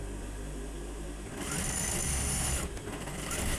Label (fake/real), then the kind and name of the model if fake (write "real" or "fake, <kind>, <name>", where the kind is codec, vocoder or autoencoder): real